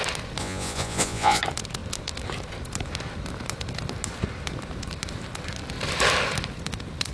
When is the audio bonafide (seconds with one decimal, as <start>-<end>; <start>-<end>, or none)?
0.0-0.4; 1.4-7.1